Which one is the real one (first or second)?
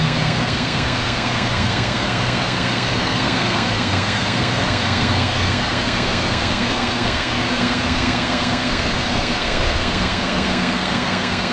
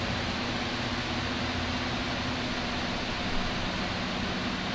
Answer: second